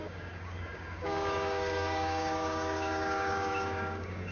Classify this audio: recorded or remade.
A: remade